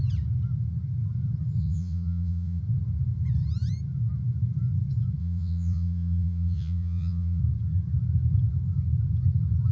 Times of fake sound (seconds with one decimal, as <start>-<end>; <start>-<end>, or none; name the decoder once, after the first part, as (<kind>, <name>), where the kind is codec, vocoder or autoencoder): 1.6-2.6 (vocoder, Vocos); 5.2-7.4